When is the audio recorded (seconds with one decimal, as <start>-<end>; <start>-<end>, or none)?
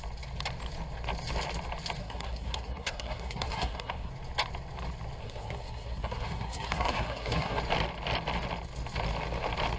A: 0.0-2.0; 4.1-5.2; 7.6-9.8